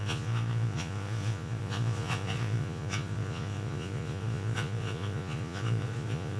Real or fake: fake